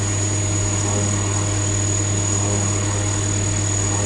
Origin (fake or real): real